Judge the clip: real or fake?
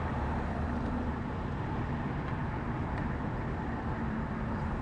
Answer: fake